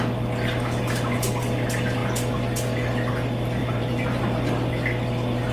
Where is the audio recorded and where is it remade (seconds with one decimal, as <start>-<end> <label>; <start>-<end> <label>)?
0.0-3.6 recorded; 3.6-4.2 remade; 4.2-5.5 recorded